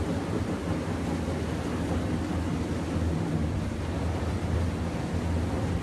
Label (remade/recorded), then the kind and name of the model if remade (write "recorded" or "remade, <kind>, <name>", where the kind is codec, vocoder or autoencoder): recorded